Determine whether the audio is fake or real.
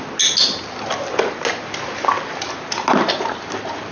real